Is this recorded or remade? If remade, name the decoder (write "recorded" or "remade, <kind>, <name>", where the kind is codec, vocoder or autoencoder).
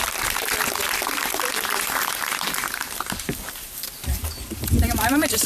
remade, vocoder, BigVGAN v2